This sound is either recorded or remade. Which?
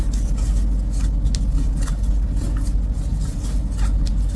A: recorded